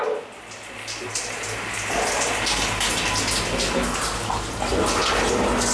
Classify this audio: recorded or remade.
recorded